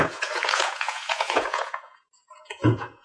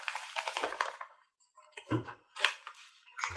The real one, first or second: second